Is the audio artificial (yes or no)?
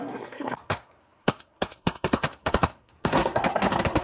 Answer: yes